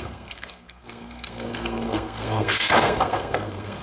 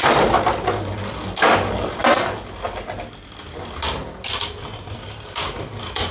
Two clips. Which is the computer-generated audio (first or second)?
first